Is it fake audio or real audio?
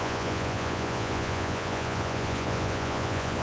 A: fake